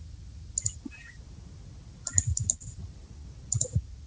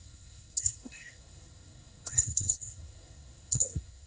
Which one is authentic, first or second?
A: first